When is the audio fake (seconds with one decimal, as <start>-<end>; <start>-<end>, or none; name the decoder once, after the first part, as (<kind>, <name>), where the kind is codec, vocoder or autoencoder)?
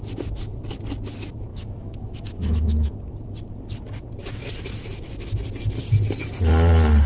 1.5-2.9 (autoencoder, DAC-VAE)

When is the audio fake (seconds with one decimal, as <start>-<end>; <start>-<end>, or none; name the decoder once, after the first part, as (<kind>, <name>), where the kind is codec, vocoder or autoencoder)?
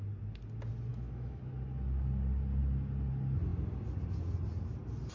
0.9-1.4 (autoencoder, DAC-VAE)